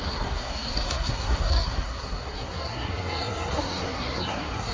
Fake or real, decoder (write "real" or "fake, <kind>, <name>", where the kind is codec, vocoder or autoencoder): fake, codec, SNAC